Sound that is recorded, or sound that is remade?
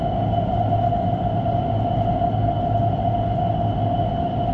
recorded